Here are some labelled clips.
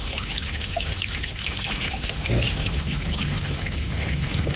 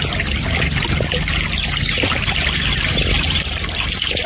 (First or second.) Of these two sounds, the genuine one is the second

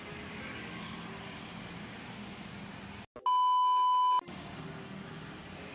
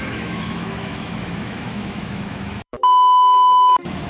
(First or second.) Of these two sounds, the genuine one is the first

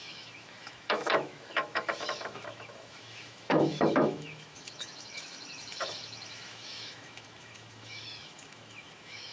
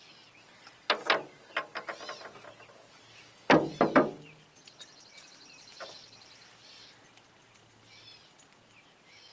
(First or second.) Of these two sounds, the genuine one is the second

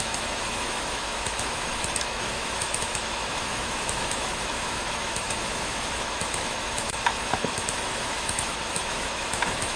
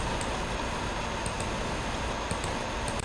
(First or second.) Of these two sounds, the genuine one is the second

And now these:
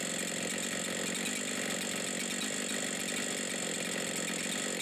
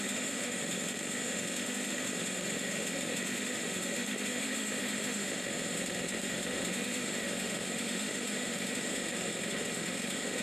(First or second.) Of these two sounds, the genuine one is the first